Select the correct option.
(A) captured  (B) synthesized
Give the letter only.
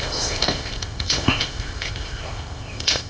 B